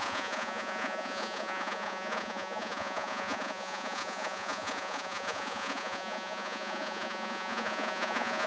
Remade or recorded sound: remade